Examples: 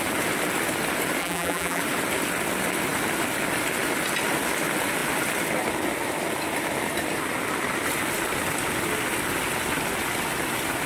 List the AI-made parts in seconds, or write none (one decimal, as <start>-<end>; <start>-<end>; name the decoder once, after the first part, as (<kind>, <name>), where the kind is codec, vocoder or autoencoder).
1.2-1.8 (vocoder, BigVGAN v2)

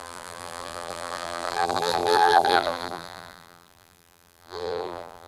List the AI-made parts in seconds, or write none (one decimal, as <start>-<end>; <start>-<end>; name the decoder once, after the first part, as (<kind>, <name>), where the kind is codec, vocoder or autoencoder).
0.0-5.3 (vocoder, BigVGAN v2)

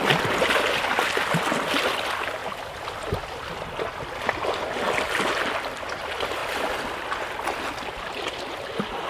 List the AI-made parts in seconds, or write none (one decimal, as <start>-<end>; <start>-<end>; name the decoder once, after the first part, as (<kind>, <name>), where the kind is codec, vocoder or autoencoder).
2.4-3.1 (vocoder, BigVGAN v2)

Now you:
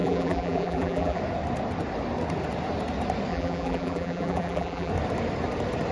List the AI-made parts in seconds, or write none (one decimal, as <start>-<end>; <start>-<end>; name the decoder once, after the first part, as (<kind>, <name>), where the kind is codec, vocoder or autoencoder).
0.0-1.2 (vocoder, BigVGAN v2); 3.3-4.9

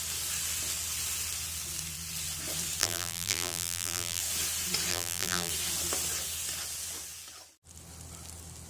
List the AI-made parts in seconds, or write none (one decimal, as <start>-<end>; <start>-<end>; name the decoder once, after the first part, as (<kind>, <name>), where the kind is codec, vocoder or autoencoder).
2.8-4.2 (vocoder, BigVGAN v2); 4.9-5.5

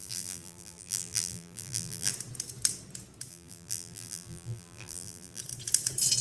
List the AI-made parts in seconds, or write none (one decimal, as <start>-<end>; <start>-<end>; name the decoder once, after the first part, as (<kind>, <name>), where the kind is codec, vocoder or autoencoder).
0.0-2.1 (vocoder, BigVGAN v2); 3.3-5.4

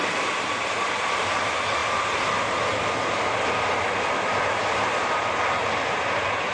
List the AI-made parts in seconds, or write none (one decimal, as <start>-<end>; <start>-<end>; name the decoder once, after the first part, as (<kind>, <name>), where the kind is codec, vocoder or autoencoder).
none

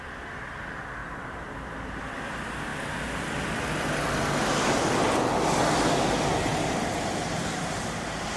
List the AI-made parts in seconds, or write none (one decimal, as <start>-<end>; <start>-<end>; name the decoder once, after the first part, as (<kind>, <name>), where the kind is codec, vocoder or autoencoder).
1.0-2.0 (vocoder, BigVGAN v2); 6.5-8.4